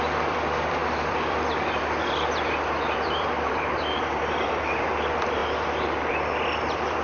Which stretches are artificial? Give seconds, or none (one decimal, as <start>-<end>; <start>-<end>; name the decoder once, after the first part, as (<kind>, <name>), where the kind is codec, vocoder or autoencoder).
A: 0.0-5.4 (vocoder, BigVGAN v2); 6.1-7.0